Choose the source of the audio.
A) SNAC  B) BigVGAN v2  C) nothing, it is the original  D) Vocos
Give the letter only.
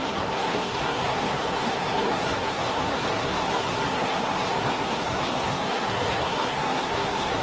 A